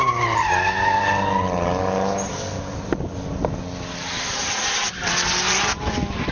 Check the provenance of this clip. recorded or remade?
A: recorded